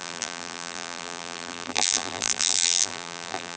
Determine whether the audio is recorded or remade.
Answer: remade